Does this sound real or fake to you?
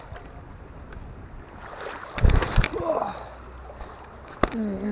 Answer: real